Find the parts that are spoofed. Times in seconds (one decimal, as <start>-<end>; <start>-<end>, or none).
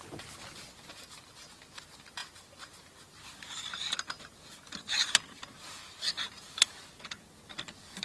none